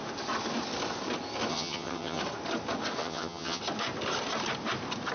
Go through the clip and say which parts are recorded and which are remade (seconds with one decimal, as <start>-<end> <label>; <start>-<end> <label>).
0.0-1.5 recorded; 1.5-2.2 remade; 2.2-3.0 recorded; 3.0-3.6 remade; 3.6-5.1 recorded